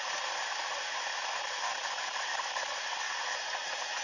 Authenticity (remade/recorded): recorded